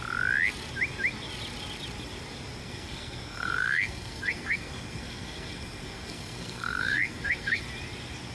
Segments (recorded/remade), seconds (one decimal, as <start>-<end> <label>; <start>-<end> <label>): 0.0-2.6 recorded; 2.6-7.6 remade; 7.6-8.3 recorded